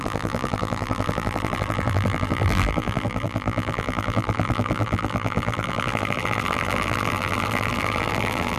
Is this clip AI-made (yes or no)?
yes